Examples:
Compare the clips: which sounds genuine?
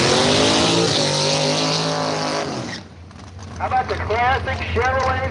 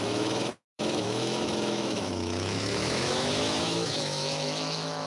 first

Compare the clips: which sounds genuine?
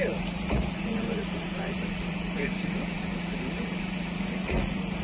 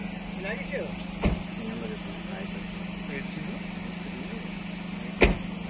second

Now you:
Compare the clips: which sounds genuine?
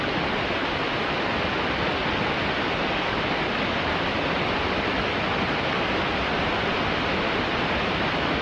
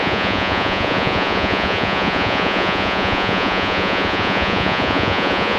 first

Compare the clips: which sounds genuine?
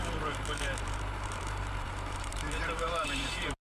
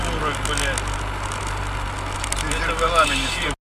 second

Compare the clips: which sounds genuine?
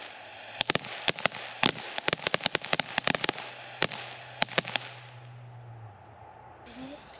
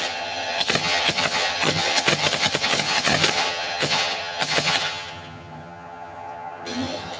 first